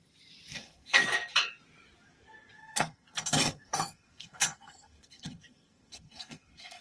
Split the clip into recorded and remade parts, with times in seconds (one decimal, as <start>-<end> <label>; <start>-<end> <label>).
0.0-0.5 recorded; 0.5-1.0 remade; 1.0-2.6 recorded; 2.6-6.8 remade